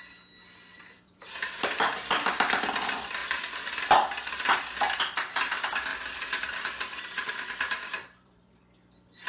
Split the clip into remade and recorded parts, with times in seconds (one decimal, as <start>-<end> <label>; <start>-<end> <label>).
0.0-0.7 recorded; 0.7-2.3 remade; 2.3-5.9 recorded; 5.9-8.6 remade; 8.6-9.3 recorded